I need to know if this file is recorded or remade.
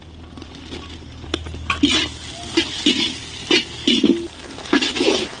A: recorded